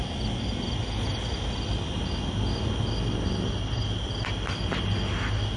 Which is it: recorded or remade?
recorded